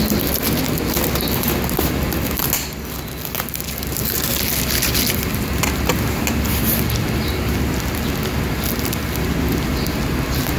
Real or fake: real